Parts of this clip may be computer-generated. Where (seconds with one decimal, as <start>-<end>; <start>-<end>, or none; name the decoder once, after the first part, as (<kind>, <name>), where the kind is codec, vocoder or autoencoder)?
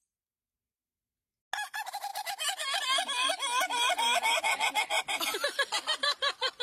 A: none